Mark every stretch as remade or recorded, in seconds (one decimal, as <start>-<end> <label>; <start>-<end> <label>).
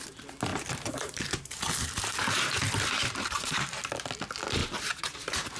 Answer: 0.0-0.5 recorded; 0.5-3.8 remade; 3.8-4.6 recorded; 4.6-5.6 remade